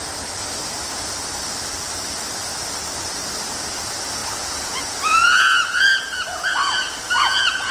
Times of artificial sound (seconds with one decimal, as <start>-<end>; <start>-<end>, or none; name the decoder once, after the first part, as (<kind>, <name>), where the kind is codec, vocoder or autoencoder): 4.2-7.7 (vocoder, Vocos)